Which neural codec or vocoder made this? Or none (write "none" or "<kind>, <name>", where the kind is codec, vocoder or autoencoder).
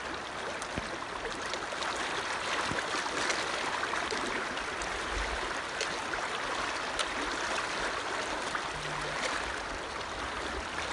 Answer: none